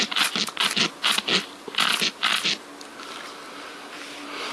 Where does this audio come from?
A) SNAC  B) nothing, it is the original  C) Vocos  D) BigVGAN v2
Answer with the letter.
B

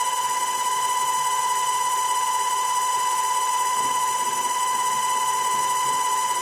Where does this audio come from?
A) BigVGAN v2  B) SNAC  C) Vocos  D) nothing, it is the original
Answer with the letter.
D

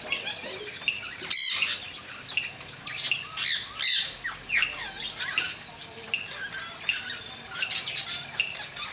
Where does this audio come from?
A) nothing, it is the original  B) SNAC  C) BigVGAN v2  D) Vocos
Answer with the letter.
A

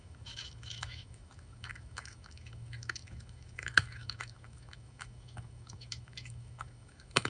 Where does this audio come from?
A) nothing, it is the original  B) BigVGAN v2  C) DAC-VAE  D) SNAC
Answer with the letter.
C